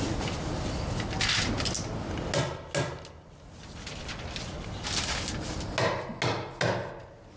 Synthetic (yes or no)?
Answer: no